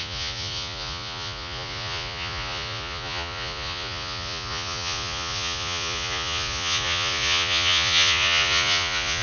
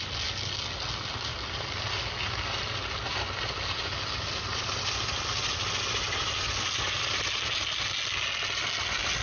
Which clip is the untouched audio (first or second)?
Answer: second